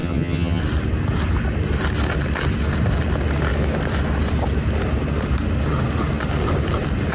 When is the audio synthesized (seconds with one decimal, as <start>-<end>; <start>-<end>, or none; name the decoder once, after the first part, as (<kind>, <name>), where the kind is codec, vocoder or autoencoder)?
0.0-0.6 (vocoder, HiFi-GAN)